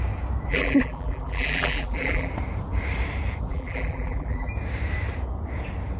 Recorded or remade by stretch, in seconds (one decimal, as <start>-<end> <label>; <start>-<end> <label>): 0.0-0.5 recorded; 0.5-2.3 remade; 2.3-3.5 recorded; 3.5-4.5 remade; 4.5-6.0 recorded